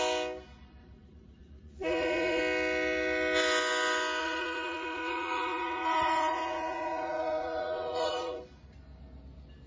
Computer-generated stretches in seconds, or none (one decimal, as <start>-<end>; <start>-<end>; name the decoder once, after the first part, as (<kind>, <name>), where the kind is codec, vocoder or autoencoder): 0.8-2.4 (vocoder, Vocos); 4.2-8.4